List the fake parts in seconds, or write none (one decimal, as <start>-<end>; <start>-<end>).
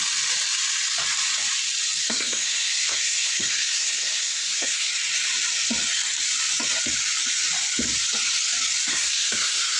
2.0-4.9; 8.9-9.8